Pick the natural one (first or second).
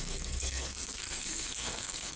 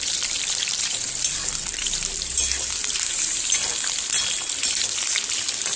second